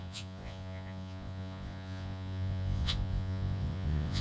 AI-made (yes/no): yes